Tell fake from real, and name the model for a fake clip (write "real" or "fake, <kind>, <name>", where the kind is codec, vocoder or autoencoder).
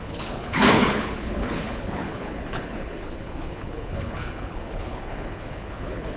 fake, codec, HILCodec